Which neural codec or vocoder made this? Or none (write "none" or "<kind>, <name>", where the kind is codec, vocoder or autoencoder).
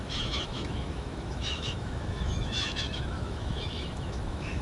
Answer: autoencoder, DAC-VAE